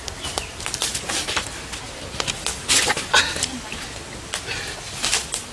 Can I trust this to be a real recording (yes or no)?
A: yes